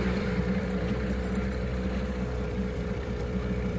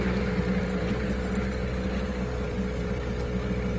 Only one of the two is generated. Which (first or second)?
first